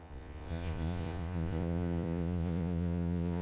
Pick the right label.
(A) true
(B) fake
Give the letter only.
B